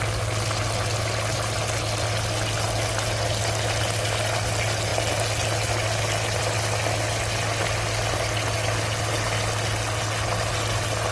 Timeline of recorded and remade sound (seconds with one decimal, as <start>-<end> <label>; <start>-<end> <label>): 0.0-11.1 recorded